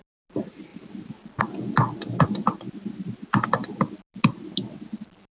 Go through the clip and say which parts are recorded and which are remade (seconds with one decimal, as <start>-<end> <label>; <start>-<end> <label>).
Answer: 0.0-5.3 recorded